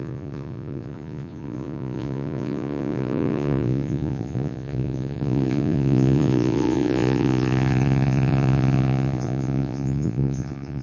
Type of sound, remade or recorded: remade